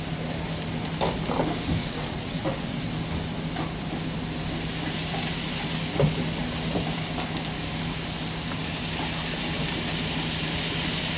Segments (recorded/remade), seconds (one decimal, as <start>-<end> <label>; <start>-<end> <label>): 0.0-1.8 recorded; 1.8-2.8 remade; 2.8-11.2 recorded